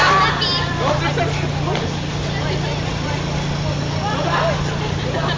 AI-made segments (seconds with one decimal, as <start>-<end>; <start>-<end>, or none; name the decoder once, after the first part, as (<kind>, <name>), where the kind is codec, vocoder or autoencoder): none